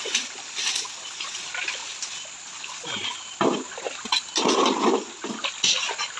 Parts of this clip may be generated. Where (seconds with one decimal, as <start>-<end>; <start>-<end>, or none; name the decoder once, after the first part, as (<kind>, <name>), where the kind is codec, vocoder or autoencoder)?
none